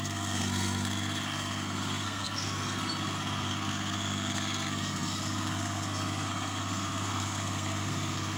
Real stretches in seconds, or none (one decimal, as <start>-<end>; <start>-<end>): none